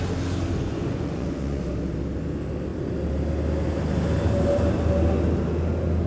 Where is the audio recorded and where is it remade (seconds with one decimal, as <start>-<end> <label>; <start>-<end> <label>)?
0.0-0.6 recorded; 0.6-1.6 remade; 1.6-6.1 recorded